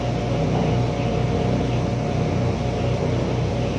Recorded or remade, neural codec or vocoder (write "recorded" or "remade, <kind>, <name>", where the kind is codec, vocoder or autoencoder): recorded